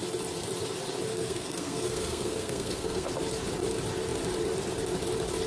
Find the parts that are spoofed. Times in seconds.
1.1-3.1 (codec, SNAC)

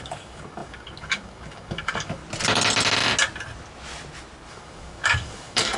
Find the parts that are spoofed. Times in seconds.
0.0-2.2 (codec, DAC); 4.5-5.8

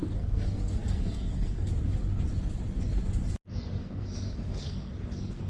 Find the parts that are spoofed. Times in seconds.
0.0-1.7 (codec, SNAC); 3.5-5.5

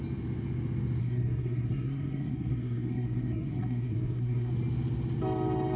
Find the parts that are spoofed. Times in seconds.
1.0-4.5 (codec, SNAC)